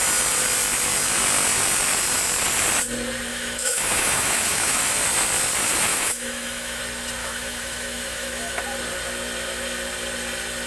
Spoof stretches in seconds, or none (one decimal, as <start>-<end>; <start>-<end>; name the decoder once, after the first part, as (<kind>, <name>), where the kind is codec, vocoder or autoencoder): 3.3-4.8 (autoencoder, DAC-VAE); 5.9-6.8; 7.2-8.6